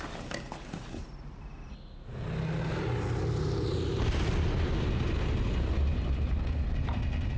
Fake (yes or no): no